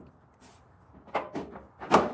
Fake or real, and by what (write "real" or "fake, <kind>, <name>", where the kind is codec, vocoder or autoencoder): real